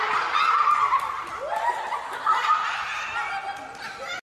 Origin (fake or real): real